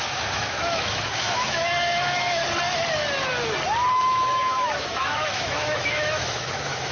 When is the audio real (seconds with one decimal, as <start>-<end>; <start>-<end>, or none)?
2.4-3.9